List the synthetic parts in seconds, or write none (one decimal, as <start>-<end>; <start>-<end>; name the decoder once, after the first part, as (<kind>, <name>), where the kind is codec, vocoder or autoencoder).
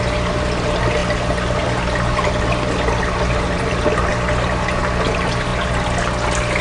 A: none